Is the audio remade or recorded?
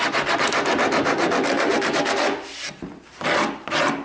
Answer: recorded